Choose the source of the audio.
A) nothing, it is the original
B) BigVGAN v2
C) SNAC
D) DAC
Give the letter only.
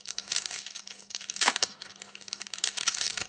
D